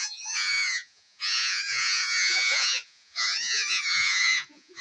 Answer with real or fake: fake